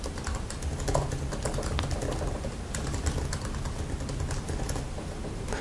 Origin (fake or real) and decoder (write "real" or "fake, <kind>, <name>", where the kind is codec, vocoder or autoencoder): real